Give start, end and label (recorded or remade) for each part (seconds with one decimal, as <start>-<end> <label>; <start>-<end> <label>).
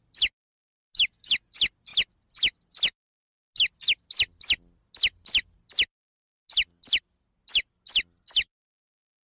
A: 0.0-9.2 recorded